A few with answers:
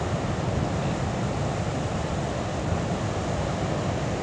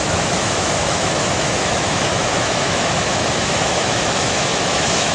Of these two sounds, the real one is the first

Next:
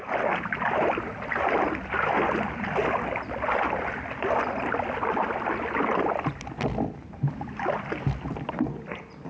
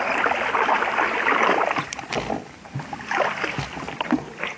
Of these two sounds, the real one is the first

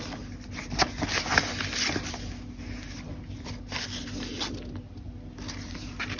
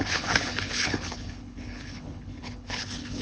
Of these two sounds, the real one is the first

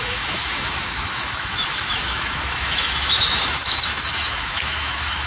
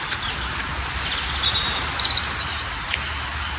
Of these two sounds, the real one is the second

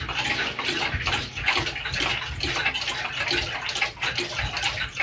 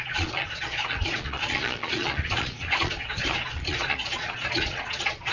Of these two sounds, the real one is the first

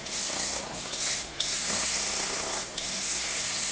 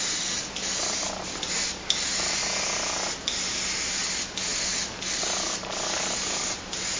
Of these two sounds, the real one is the second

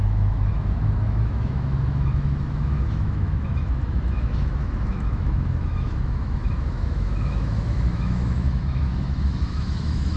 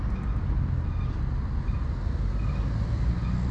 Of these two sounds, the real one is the second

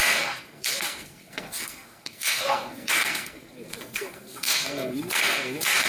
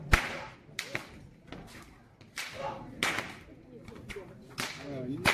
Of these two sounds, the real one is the second